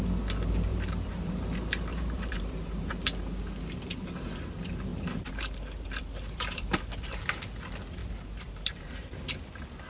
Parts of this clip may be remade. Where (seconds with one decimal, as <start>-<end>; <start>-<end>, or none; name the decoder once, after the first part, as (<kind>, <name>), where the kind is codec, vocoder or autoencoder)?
0.7-1.3 (vocoder, BigVGAN v2); 1.9-2.9; 4.9-7.2; 8.0-9.1

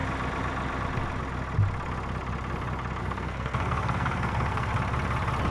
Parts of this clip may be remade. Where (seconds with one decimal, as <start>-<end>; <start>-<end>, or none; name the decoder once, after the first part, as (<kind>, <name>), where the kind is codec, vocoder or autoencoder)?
3.0-4.7 (codec, SNAC)